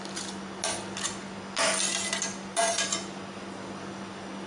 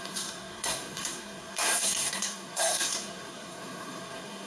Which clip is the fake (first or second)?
second